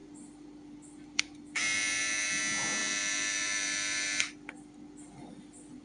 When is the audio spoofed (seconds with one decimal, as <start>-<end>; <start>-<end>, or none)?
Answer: 0.0-2.4; 2.8-5.3